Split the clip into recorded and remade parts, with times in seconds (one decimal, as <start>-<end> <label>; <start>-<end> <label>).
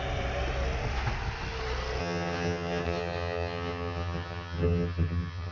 0.0-2.0 recorded; 2.0-5.5 remade